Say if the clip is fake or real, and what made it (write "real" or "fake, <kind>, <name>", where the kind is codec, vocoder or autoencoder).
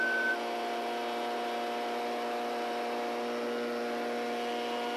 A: real